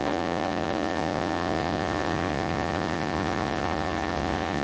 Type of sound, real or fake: fake